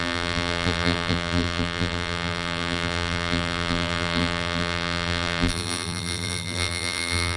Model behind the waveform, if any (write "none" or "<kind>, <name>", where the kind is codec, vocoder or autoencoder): vocoder, BigVGAN v2